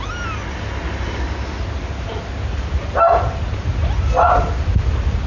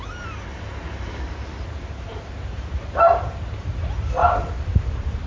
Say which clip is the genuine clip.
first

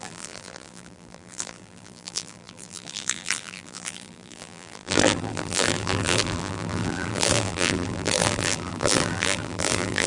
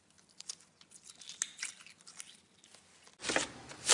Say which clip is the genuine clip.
second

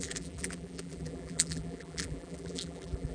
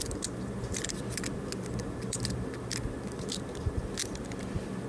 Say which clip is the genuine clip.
second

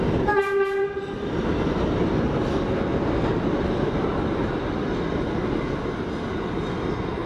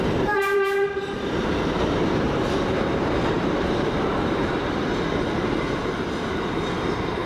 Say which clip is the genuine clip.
first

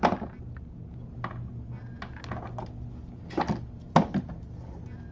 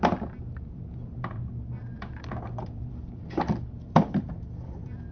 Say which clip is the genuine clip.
first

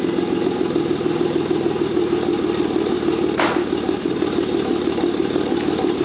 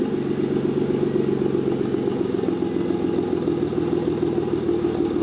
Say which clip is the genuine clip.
second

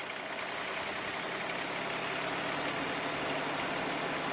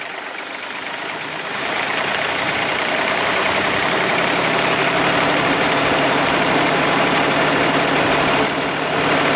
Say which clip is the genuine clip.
first